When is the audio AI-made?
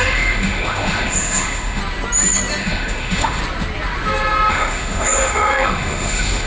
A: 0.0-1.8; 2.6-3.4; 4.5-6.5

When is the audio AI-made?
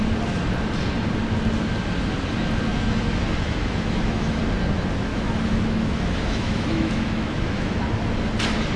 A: 2.7-4.4; 5.1-7.8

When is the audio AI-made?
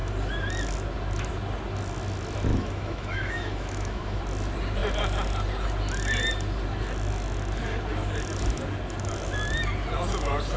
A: 2.5-4.2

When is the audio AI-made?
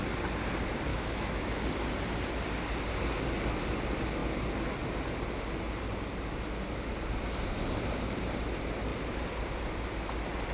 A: 0.9-1.6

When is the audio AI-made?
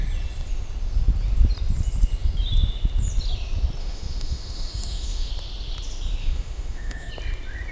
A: 3.8-5.3; 6.2-7.1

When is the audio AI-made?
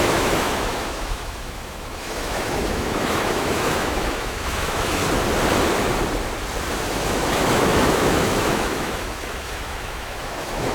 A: 0.0-5.0; 6.9-10.7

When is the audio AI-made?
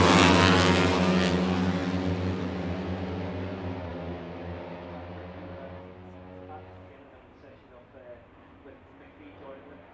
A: none